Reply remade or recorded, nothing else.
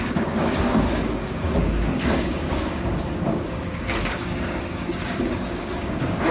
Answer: remade